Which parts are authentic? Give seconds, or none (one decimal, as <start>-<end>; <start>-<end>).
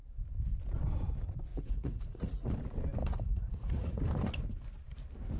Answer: 0.0-1.5; 2.5-3.0; 4.0-5.4